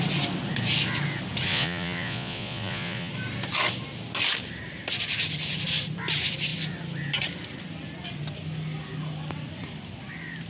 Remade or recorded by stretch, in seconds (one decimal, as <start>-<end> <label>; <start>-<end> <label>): 0.0-1.5 recorded; 1.5-3.1 remade; 3.1-10.5 recorded